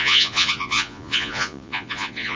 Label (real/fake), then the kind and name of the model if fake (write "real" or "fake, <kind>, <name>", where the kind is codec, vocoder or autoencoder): fake, vocoder, Vocos